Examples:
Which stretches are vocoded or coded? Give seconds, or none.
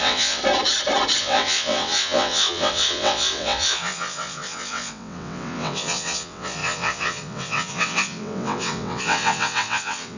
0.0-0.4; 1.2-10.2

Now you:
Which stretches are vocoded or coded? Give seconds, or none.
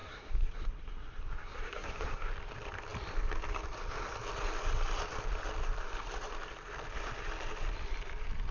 0.0-2.3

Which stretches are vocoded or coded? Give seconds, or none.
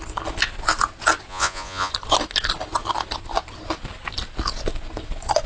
1.3-1.9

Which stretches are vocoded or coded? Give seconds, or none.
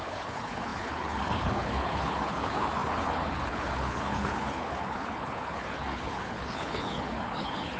0.0-7.8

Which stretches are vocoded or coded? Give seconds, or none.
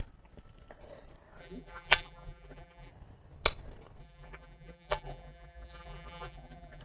1.4-2.9; 4.0-6.8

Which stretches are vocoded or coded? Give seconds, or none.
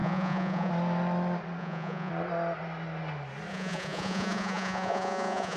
0.0-0.7; 1.6-2.1; 3.5-5.6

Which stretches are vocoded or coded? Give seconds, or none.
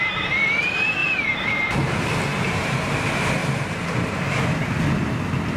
1.0-1.5; 2.3-2.9; 3.4-4.3